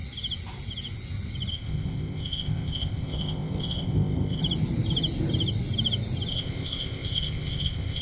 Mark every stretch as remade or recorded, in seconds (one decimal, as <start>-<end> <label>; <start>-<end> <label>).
0.0-1.5 recorded; 1.5-4.4 remade; 4.4-6.3 recorded; 6.3-8.0 remade